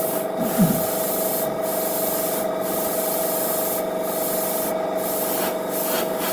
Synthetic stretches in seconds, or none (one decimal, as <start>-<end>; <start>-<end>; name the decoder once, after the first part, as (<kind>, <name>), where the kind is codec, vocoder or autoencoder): none